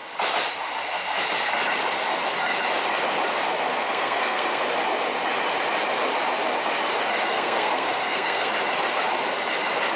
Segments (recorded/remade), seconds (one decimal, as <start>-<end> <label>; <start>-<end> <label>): 0.0-3.8 recorded; 3.8-4.6 remade; 4.6-7.3 recorded; 7.3-8.5 remade; 8.5-10.0 recorded

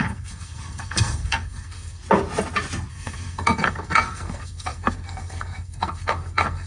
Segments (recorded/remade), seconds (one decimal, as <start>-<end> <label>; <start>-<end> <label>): 0.0-2.0 remade; 2.0-2.9 recorded; 2.9-6.7 remade

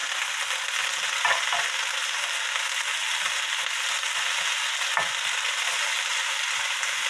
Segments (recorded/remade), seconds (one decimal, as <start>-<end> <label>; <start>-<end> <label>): 0.0-7.1 recorded

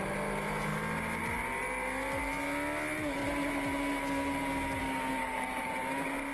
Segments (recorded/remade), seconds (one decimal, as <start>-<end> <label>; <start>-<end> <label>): 0.0-5.2 recorded; 5.2-5.7 remade; 5.7-6.3 recorded